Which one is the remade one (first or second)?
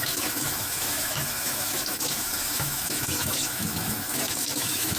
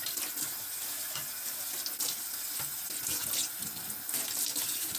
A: first